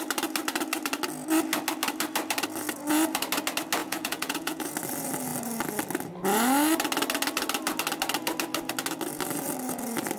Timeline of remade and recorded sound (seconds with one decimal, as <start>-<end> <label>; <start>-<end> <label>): 0.0-3.8 recorded; 3.8-4.7 remade; 4.7-10.2 recorded